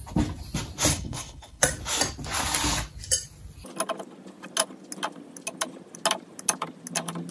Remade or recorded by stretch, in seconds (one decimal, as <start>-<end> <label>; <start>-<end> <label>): 0.0-0.9 recorded; 0.9-1.6 remade; 1.6-7.3 recorded